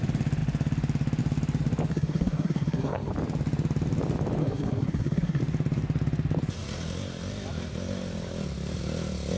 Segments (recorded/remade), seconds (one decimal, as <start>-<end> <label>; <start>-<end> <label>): 0.0-1.9 recorded; 1.9-3.1 remade; 3.1-4.4 recorded; 4.4-5.4 remade; 5.4-9.4 recorded